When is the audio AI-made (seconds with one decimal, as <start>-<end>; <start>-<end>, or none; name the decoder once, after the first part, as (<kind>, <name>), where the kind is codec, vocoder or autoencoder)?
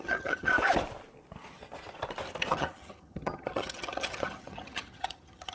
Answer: 0.0-0.5 (vocoder, HiFi-GAN); 2.5-5.5